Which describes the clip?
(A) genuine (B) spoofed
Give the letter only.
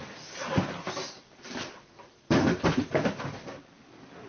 A